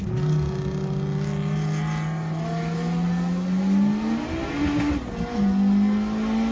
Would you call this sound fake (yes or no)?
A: no